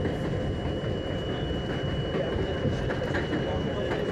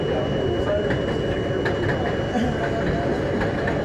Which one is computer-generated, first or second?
first